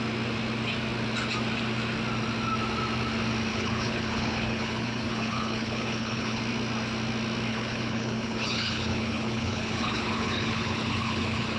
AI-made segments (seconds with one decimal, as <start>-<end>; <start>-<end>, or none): 3.5-6.4; 7.5-11.6